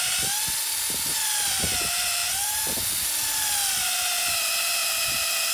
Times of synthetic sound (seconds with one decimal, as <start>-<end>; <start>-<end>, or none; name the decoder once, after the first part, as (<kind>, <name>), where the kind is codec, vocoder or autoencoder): none

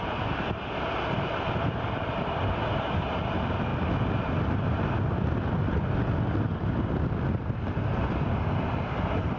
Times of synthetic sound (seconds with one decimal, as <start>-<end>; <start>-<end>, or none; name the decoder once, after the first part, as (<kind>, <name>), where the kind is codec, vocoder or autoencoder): none

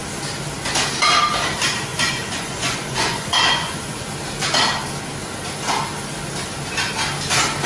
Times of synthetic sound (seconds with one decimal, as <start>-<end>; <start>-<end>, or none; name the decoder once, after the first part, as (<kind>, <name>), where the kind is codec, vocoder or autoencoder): 1.9-4.1 (vocoder, Vocos)